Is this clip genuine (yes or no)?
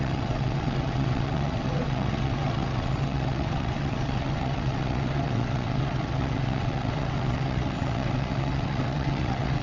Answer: no